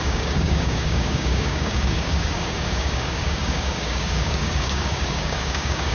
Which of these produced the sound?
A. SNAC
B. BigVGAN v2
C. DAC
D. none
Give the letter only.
C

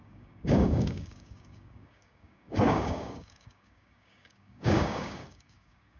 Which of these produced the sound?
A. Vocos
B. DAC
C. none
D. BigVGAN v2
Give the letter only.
B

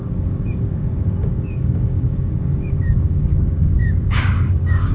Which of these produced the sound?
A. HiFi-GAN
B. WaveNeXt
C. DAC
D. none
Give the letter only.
C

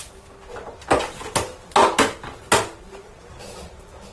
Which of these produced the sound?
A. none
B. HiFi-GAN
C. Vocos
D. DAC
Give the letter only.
A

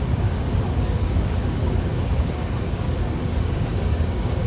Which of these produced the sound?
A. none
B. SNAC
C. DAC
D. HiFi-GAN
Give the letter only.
C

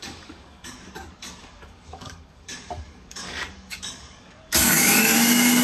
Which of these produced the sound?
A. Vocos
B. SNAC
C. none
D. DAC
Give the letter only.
D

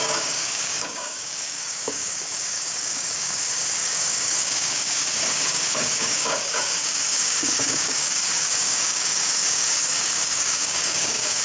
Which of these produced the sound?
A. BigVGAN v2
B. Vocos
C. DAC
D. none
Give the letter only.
C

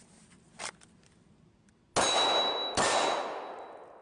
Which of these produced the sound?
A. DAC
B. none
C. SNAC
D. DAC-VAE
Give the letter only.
B